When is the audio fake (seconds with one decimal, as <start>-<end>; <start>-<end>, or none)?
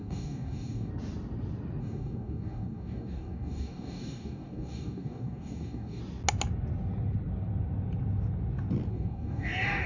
0.0-0.9; 1.8-6.0; 8.9-9.9